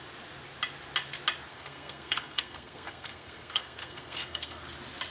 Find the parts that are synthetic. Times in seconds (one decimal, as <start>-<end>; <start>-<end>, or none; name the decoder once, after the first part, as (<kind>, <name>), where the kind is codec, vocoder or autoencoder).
1.5-4.6 (codec, SNAC)